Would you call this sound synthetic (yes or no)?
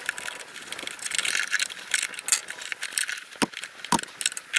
no